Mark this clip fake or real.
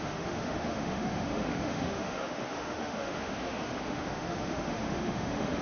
fake